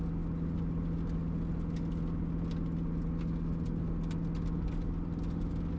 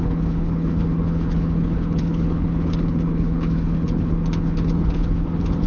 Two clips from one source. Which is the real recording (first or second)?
first